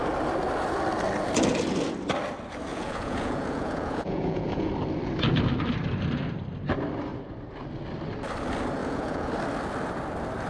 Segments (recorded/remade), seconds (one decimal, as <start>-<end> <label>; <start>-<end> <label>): 0.0-2.7 recorded; 2.7-4.7 remade; 4.7-8.8 recorded; 8.8-9.3 remade; 9.3-10.5 recorded